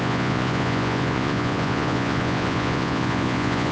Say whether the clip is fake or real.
fake